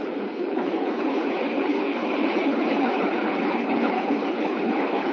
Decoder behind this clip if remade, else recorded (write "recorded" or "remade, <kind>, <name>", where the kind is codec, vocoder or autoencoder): remade, codec, HILCodec